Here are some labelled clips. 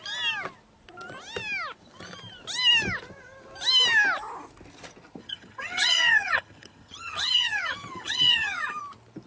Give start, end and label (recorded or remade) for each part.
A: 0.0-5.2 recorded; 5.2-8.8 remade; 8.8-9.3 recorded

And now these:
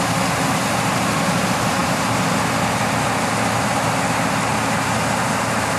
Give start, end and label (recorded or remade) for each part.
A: 0.0-5.8 recorded